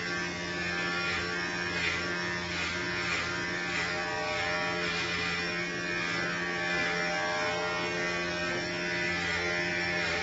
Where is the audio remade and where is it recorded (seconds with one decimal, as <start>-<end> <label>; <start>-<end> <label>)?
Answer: 0.0-10.2 recorded